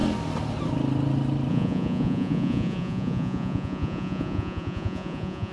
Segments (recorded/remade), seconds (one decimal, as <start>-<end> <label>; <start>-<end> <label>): 0.0-1.5 recorded; 1.5-5.5 remade